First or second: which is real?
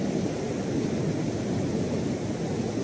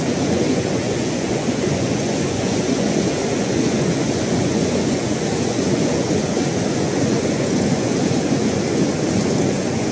first